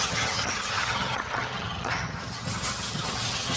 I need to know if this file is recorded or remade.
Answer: remade